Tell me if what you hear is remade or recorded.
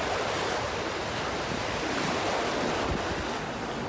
recorded